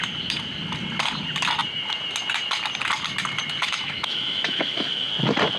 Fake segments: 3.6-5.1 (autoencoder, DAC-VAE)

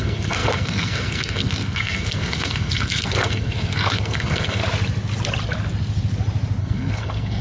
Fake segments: 0.0-4.6 (codec, SNAC); 6.6-7.4

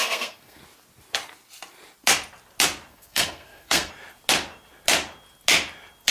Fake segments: 0.0-0.6 (codec, SNAC); 2.9-3.9

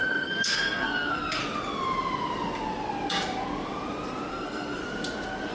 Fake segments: 0.0-1.4 (codec, SNAC); 4.3-4.8

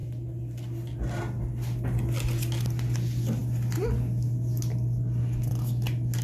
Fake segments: none